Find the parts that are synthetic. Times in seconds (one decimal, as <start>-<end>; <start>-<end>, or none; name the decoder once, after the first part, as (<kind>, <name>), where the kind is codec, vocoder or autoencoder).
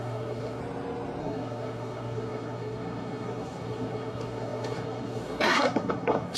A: 0.0-0.6 (codec, SNAC); 1.2-6.4